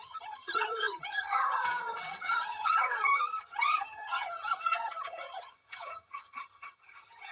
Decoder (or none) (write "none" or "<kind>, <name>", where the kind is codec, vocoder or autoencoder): vocoder, HiFi-GAN